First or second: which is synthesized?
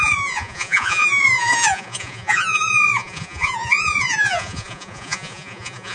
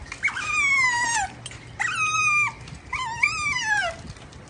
first